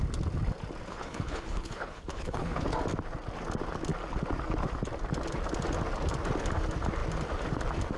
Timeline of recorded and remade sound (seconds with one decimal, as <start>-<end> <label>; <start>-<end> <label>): 0.0-0.9 recorded; 0.9-2.6 remade; 2.6-8.0 recorded